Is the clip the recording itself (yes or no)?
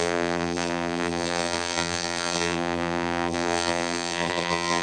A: no